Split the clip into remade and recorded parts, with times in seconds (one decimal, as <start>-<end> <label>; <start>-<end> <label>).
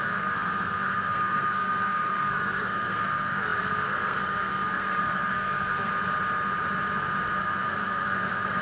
0.0-5.9 remade; 5.9-7.4 recorded; 7.4-8.6 remade